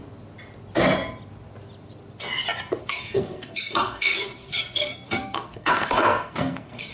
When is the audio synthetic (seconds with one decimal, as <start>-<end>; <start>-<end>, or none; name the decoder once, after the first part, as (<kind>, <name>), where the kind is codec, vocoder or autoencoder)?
2.8-6.9 (codec, SNAC)